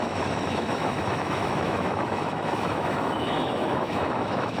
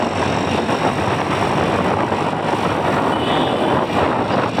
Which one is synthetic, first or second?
first